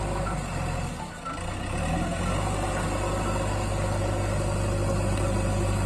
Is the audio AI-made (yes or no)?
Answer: no